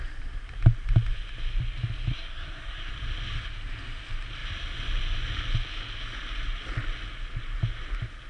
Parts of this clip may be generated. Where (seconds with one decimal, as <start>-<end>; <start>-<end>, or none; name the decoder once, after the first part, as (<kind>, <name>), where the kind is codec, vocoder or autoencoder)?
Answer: 2.1-2.9 (codec, SNAC)